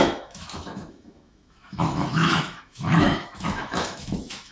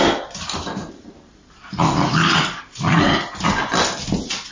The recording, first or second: second